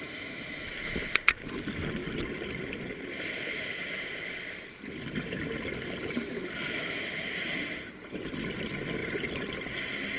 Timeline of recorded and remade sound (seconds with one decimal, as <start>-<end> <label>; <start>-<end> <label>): 0.0-10.2 recorded